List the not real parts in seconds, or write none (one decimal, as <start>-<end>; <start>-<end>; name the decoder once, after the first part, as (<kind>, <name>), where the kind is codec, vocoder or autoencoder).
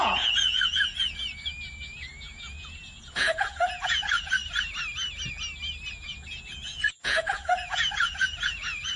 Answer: 0.0-4.4 (vocoder, Vocos); 5.9-9.0